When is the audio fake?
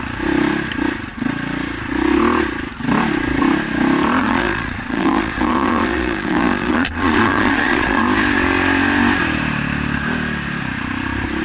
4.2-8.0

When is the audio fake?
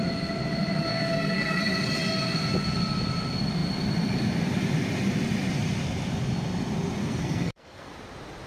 0.9-1.6; 7.0-7.9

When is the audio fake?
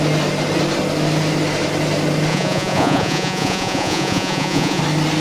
2.3-4.8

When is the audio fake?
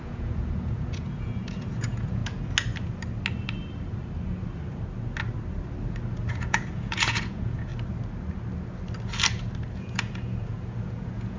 0.0-2.2; 6.3-7.7; 9.7-11.4